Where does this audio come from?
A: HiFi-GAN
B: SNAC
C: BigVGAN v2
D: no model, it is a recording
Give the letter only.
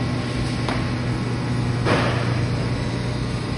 D